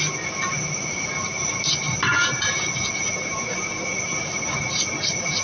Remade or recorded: recorded